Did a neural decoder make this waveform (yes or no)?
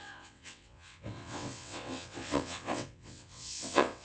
yes